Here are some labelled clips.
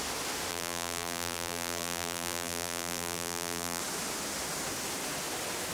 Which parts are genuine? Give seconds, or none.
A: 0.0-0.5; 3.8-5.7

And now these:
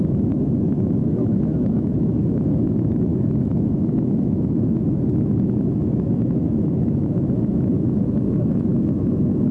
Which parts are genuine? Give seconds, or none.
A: none

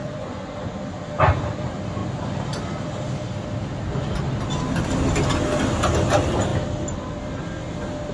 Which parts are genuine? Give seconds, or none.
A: 0.7-8.1

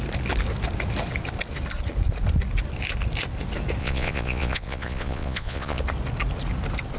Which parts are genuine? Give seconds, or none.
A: 0.0-3.8; 5.8-7.0

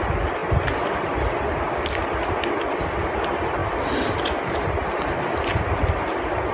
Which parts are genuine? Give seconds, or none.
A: 0.0-5.5

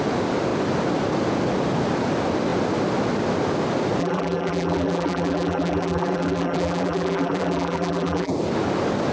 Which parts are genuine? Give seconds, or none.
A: 0.0-4.0; 8.3-9.1